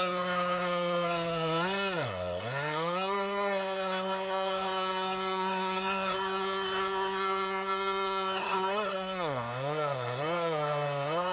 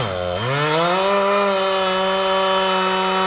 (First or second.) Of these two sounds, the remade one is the first